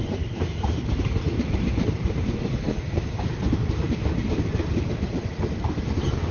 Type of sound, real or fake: fake